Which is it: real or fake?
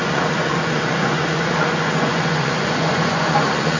fake